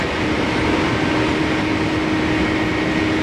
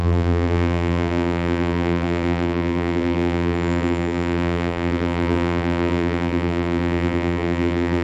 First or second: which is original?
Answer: first